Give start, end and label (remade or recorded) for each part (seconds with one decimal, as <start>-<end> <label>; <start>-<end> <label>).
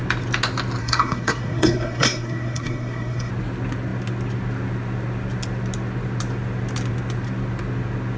0.0-0.8 recorded; 0.8-3.3 remade; 3.3-8.2 recorded